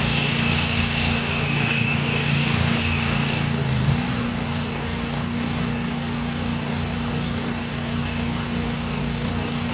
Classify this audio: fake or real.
fake